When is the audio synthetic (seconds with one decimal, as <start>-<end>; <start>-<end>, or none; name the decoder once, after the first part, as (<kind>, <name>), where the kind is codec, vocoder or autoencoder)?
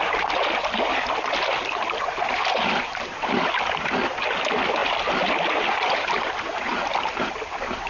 none